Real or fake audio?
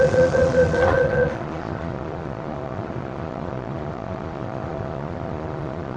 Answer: fake